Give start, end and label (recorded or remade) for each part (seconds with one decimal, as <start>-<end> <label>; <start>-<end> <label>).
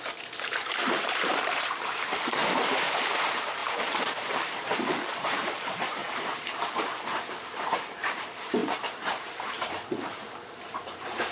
0.0-11.3 remade